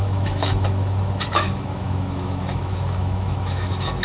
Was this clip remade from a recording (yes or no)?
yes